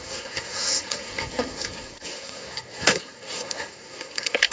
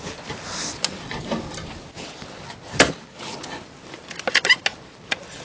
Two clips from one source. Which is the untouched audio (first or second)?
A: second